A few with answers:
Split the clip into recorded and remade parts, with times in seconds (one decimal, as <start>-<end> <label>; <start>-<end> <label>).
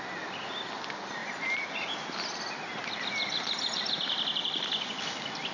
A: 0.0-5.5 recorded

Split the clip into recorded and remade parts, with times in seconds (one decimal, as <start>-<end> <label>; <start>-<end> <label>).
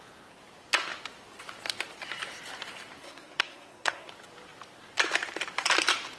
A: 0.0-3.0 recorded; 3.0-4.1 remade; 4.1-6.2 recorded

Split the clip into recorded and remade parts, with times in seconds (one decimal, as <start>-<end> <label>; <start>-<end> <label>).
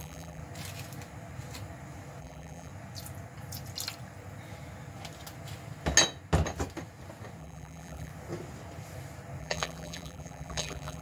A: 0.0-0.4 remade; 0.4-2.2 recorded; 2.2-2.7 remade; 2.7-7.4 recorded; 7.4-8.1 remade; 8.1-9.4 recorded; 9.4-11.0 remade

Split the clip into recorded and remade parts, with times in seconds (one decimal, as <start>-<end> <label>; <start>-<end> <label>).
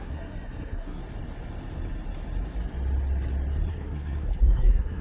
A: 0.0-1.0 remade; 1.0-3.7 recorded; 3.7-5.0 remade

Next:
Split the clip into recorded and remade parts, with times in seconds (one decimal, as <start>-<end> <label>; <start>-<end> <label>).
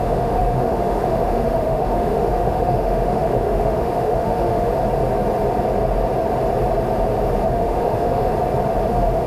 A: 0.0-4.7 remade; 4.7-7.5 recorded; 7.5-8.3 remade; 8.3-8.9 recorded; 8.9-9.3 remade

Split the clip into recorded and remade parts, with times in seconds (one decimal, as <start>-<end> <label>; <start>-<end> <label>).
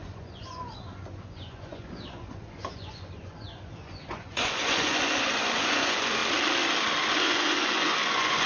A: 0.0-6.2 remade; 6.2-7.1 recorded; 7.1-8.5 remade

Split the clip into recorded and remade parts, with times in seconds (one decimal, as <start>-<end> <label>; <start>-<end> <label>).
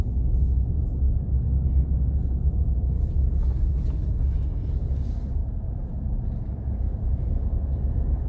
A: 0.0-5.4 recorded; 5.4-7.2 remade; 7.2-8.3 recorded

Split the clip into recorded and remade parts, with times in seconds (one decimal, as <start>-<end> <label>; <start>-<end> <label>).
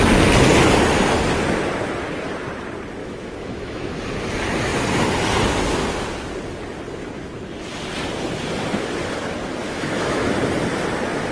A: 0.0-3.0 recorded; 3.0-3.9 remade; 3.9-9.6 recorded; 9.6-10.3 remade; 10.3-11.3 recorded